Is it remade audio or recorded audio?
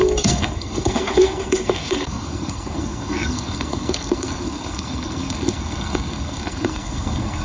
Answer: remade